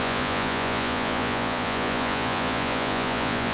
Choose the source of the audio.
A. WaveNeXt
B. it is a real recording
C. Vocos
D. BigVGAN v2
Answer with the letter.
C